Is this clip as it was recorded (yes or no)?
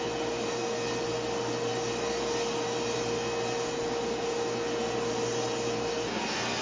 yes